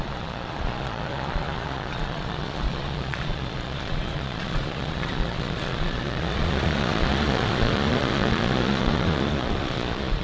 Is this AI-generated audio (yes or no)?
yes